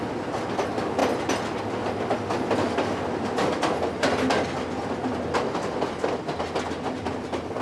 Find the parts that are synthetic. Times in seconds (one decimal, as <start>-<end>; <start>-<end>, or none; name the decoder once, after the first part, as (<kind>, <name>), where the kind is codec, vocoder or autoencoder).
none